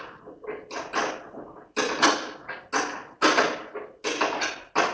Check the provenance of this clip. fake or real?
real